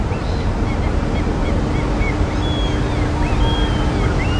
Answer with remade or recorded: recorded